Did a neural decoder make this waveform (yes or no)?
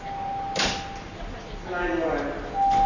no